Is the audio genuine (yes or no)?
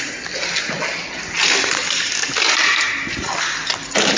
yes